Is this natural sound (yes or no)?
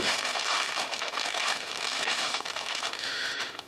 no